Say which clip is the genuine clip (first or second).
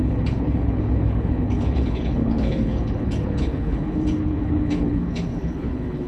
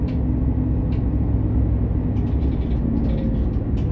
second